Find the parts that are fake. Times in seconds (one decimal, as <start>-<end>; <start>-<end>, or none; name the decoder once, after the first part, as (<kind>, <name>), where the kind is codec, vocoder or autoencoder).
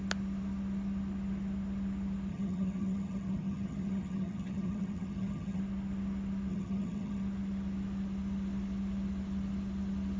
2.3-5.6 (vocoder, HiFi-GAN); 6.5-7.2